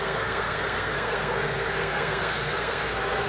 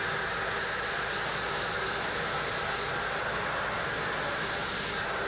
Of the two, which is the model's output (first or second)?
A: first